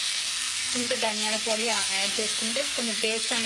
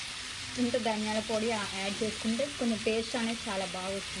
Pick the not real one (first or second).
first